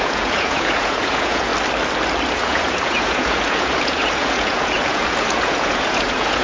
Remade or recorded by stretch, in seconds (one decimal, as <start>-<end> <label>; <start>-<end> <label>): 0.0-1.5 remade; 1.5-2.3 recorded; 2.3-6.4 remade